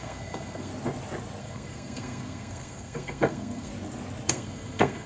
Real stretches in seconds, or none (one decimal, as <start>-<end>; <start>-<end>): 0.7-1.4; 3.7-4.3

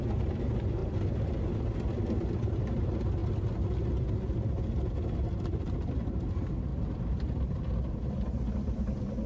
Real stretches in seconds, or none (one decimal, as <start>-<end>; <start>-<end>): 0.0-9.3

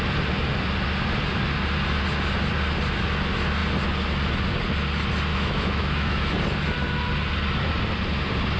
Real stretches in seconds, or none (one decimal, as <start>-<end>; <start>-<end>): 0.0-5.3; 6.3-8.6

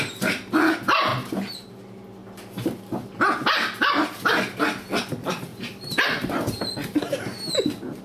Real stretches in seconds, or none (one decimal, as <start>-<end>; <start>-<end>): 0.0-5.5; 6.3-8.0

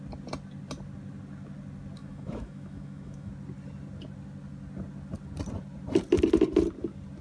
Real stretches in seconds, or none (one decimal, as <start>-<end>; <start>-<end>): 0.0-2.0; 3.3-7.2